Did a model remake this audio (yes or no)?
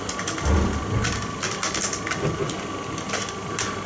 no